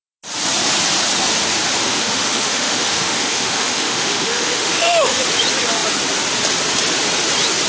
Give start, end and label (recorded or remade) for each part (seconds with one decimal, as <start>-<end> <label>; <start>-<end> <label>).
0.0-1.8 recorded; 1.8-5.2 remade; 5.2-7.7 recorded